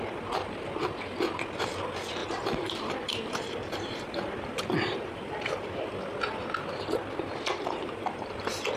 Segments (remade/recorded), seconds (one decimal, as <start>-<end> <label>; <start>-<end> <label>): 0.0-2.2 recorded; 2.2-5.9 remade; 5.9-7.5 recorded; 7.5-8.3 remade; 8.3-8.8 recorded